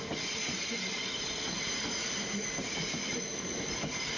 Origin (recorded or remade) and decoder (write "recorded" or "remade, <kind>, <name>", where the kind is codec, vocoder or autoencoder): recorded